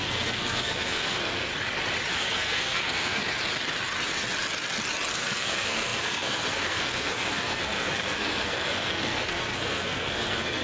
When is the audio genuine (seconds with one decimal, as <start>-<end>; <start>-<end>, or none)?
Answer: 1.5-2.1; 3.2-5.1